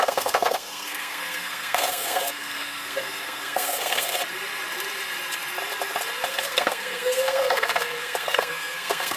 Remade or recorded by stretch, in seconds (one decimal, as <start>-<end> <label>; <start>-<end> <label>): 0.0-4.2 remade; 4.2-6.3 recorded; 6.3-9.2 remade